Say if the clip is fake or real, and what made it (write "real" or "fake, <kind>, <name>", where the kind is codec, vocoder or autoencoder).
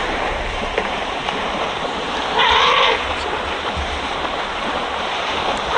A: fake, vocoder, BigVGAN v2